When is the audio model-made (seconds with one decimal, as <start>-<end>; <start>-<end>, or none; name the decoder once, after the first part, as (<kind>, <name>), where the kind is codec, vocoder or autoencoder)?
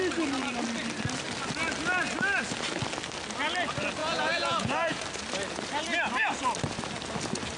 4.0-5.0 (vocoder, Vocos)